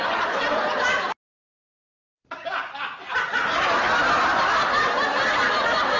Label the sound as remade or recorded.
recorded